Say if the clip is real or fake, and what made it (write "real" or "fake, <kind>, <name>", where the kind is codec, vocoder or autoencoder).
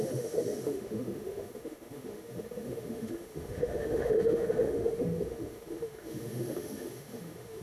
fake, autoencoder, DAC-VAE